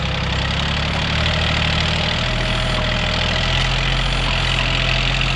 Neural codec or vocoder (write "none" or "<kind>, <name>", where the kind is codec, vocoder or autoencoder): none